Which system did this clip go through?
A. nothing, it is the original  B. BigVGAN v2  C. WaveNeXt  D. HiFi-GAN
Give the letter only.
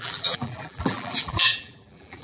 B